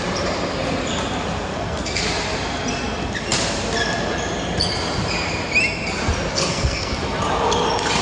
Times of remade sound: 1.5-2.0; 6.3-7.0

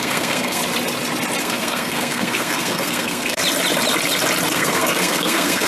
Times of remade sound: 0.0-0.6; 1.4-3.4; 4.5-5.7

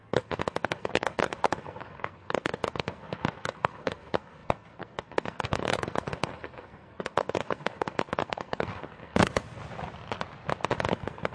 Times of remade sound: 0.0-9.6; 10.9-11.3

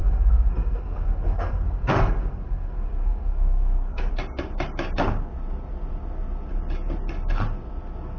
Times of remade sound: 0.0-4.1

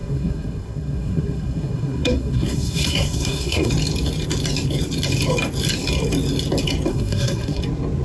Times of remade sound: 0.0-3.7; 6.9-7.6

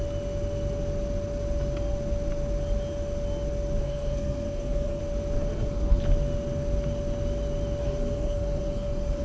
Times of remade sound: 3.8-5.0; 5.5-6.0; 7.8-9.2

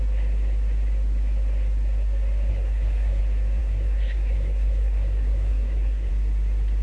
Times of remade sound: 2.5-3.2; 3.6-6.1

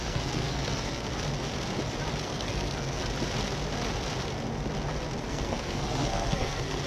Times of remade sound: 0.0-1.1; 2.2-3.0; 5.2-6.9